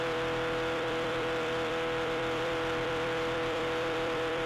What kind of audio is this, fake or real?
fake